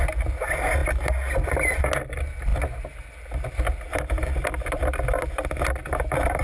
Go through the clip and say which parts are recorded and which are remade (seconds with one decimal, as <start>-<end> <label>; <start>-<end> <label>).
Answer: 0.0-6.4 recorded